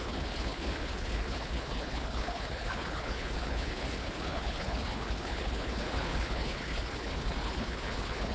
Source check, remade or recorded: remade